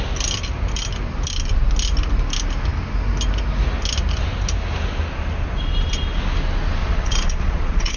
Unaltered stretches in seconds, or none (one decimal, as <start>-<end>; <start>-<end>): 0.0-6.8